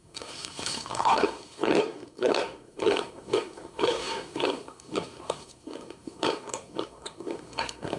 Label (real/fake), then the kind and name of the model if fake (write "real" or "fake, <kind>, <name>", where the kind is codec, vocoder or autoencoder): fake, codec, SNAC